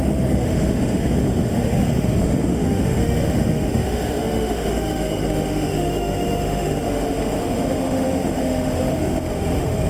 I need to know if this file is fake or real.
fake